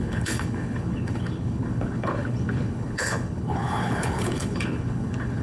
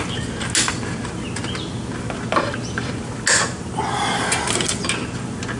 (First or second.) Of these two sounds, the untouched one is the second